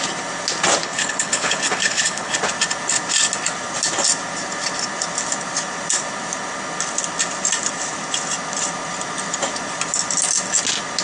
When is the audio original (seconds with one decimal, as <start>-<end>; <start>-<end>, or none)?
0.0-0.8; 2.4-11.0